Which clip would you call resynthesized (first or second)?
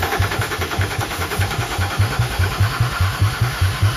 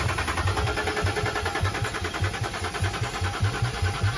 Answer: first